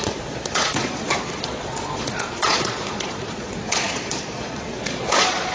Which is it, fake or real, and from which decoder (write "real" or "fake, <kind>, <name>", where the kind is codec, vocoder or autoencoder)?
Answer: fake, vocoder, Vocos